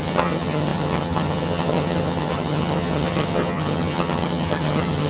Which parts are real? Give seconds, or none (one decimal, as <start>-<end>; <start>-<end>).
none